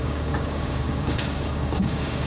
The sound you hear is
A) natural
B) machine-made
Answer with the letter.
B